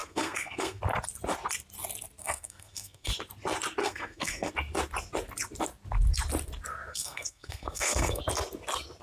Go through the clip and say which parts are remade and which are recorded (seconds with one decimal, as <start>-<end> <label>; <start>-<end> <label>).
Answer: 0.0-0.8 remade; 0.8-2.2 recorded; 2.2-3.1 remade; 3.1-3.8 recorded; 3.8-4.5 remade; 4.5-6.9 recorded; 6.9-8.2 remade; 8.2-9.0 recorded